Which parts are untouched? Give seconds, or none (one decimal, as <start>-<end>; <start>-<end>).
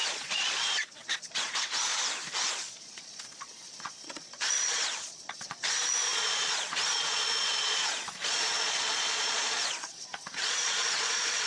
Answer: 1.9-2.5